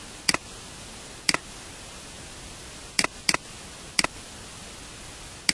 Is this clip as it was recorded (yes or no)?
yes